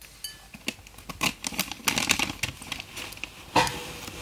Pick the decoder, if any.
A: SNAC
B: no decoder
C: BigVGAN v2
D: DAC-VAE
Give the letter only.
B